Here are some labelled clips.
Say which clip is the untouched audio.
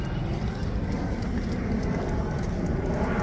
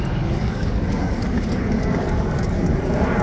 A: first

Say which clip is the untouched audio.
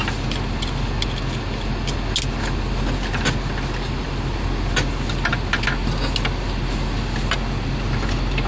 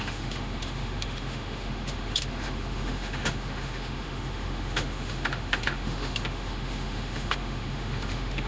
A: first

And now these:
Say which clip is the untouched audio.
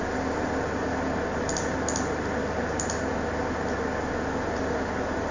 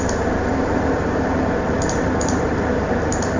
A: first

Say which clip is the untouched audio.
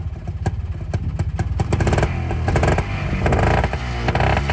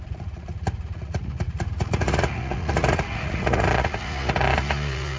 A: first